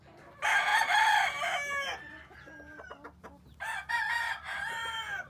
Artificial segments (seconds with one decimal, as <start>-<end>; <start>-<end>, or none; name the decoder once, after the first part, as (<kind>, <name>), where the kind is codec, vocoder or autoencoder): none